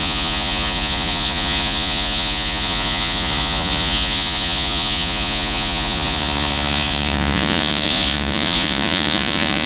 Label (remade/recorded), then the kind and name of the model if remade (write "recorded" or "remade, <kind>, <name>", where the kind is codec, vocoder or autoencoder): remade, vocoder, Vocos